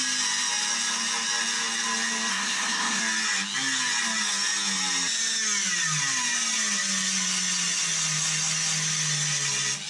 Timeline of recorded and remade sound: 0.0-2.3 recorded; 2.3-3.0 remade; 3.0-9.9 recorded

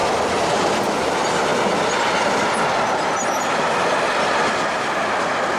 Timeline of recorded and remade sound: 0.0-5.6 recorded

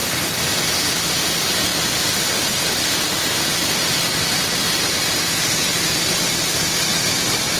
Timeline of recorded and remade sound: 0.0-0.9 recorded; 0.9-4.6 remade; 4.6-6.3 recorded; 6.3-6.9 remade; 6.9-7.6 recorded